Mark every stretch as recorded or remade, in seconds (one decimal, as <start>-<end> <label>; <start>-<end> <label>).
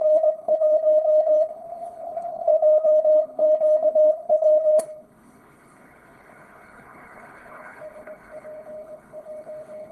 0.0-9.9 remade